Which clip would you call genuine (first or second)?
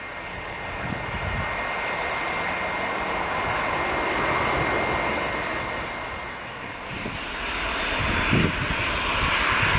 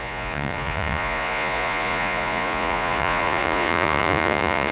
first